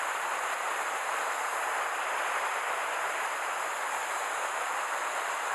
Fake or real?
fake